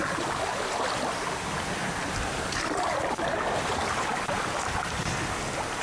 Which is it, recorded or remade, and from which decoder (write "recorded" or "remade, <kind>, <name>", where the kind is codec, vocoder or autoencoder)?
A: recorded